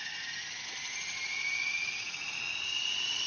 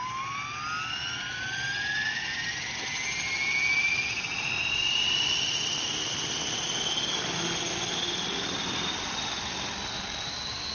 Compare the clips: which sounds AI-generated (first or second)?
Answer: first